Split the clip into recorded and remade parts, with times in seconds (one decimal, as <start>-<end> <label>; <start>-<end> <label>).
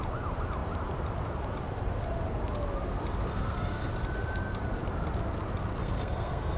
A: 0.0-3.3 recorded; 3.3-3.9 remade; 3.9-5.8 recorded; 5.8-6.6 remade